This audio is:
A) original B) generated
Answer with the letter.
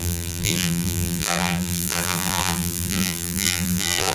B